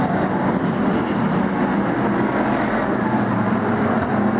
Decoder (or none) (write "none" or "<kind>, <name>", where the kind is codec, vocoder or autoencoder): none